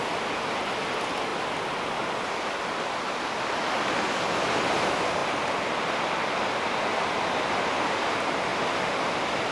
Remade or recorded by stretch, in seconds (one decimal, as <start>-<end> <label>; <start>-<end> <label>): 0.0-9.5 recorded